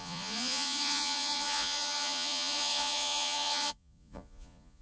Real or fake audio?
fake